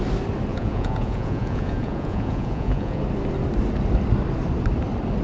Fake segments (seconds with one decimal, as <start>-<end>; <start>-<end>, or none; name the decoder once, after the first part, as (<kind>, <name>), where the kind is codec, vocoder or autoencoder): 0.5-3.0 (vocoder, Vocos)